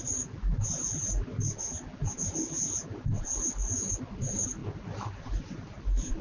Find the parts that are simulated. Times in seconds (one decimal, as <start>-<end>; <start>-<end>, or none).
none